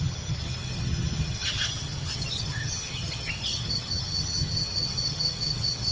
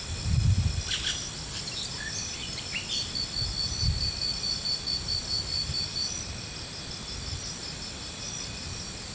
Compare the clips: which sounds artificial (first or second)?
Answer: first